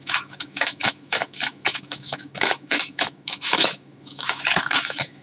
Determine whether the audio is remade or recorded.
remade